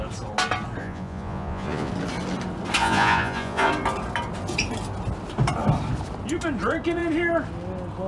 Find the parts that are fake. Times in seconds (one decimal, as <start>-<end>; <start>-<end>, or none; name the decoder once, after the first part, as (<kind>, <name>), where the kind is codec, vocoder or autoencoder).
0.8-1.9 (vocoder, Vocos); 2.8-3.7